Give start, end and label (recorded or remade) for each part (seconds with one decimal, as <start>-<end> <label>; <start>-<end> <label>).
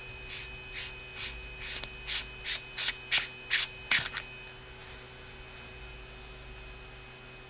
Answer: 0.0-7.5 recorded